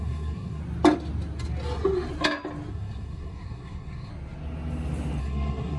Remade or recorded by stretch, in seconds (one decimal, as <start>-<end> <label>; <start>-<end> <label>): 0.0-0.6 remade; 0.6-2.7 recorded; 2.7-4.1 remade; 4.1-5.2 recorded; 5.2-5.8 remade